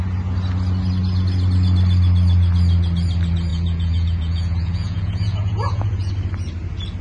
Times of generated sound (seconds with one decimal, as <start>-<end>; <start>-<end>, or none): 3.5-6.1